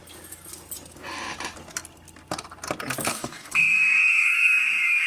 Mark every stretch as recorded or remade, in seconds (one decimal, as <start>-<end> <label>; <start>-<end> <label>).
0.0-3.1 recorded; 3.1-5.1 remade